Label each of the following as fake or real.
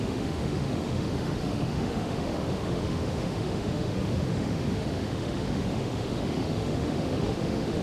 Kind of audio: fake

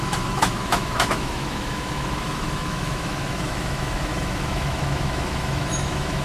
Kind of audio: fake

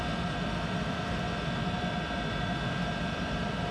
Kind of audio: real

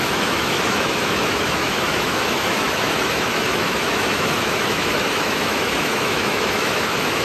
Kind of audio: fake